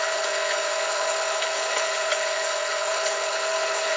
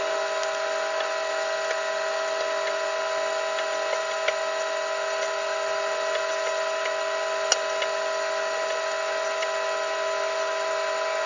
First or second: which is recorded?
second